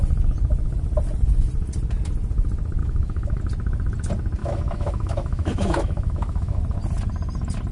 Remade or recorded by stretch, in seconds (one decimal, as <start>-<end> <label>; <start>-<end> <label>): 0.0-2.8 recorded; 2.8-3.4 remade; 3.4-4.4 recorded; 4.4-6.6 remade; 6.6-7.7 recorded